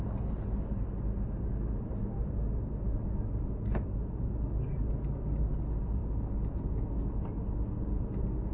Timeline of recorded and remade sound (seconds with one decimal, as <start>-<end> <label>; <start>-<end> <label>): 0.0-8.5 recorded